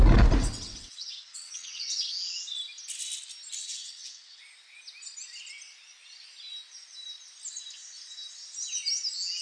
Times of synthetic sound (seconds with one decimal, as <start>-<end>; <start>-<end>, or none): 0.4-2.1; 3.6-4.4